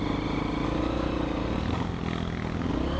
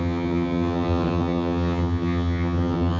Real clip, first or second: first